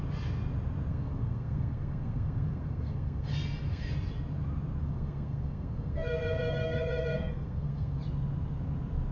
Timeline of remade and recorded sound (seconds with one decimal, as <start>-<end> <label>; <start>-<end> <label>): 0.0-0.9 recorded; 0.9-3.9 remade; 3.9-4.8 recorded; 4.8-8.0 remade; 8.0-9.1 recorded